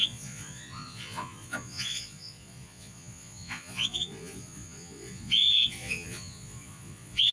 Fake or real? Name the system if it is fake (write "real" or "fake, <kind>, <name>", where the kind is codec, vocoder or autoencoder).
fake, vocoder, Vocos